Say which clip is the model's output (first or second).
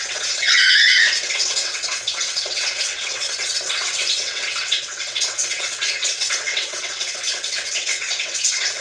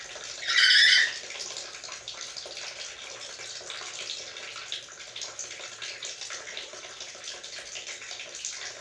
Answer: first